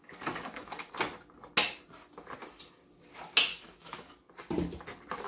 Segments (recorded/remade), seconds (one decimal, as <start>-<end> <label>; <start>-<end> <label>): 0.0-0.9 remade; 0.9-3.5 recorded; 3.5-4.2 remade; 4.2-5.3 recorded